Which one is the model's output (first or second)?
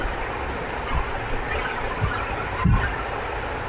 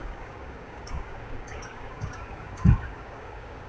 second